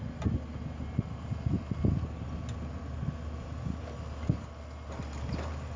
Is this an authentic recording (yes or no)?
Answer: yes